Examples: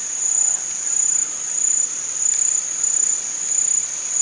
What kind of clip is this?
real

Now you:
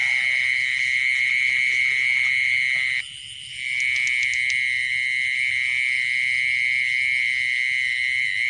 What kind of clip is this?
real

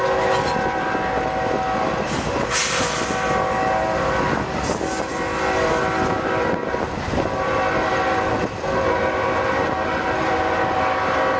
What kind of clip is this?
real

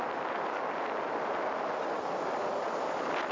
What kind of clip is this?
real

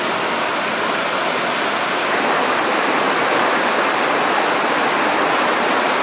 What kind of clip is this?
real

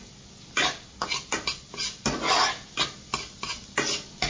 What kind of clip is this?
real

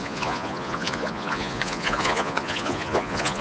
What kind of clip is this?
fake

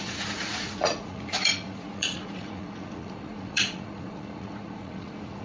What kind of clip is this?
fake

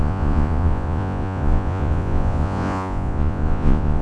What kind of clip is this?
fake